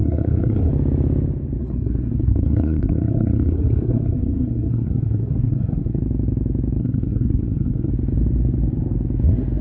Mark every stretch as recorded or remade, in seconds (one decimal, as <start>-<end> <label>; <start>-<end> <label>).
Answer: 0.0-0.7 remade; 0.7-1.6 recorded; 1.6-6.0 remade; 6.0-6.8 recorded; 6.8-7.9 remade; 7.9-9.6 recorded